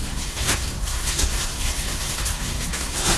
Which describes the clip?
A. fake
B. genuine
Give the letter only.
A